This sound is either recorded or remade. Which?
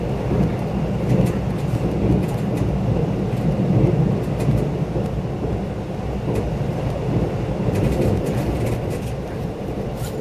recorded